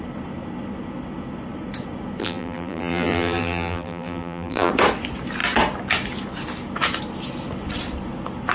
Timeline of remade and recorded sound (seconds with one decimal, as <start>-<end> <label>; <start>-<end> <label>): 0.0-2.2 recorded; 2.2-4.7 remade; 4.7-8.5 recorded